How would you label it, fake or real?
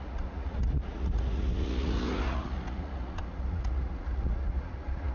fake